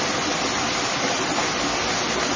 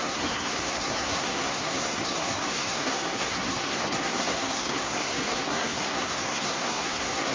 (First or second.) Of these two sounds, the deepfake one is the second